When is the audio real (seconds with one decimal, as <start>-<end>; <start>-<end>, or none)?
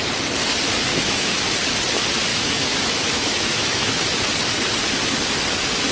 0.0-0.9; 1.4-2.3; 4.2-5.9